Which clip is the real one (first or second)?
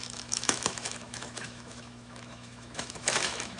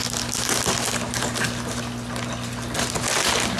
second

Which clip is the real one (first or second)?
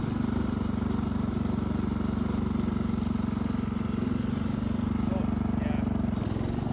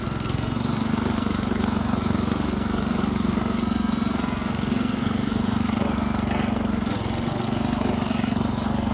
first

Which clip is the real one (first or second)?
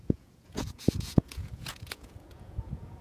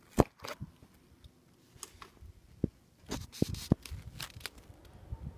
second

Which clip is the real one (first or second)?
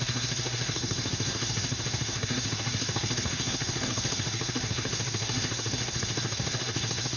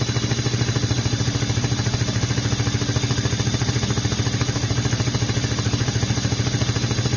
second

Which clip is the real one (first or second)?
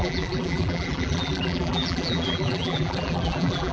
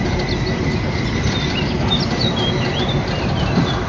second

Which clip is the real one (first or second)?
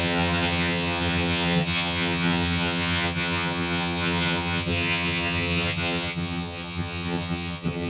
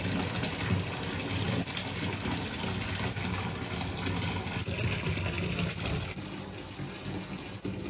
second